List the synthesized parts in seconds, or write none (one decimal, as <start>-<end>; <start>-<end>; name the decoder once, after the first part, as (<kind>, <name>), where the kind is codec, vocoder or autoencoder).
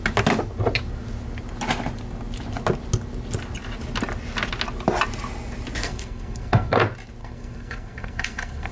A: 5.8-6.8 (codec, SNAC); 7.2-8.7